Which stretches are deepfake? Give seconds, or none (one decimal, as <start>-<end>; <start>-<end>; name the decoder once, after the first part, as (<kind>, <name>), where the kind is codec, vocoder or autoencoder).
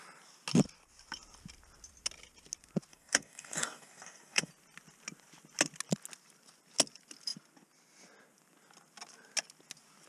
2.9-4.5 (codec, DAC)